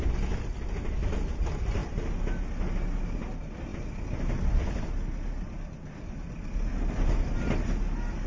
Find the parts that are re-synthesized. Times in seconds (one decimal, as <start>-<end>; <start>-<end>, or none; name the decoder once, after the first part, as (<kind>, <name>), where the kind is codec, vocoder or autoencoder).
none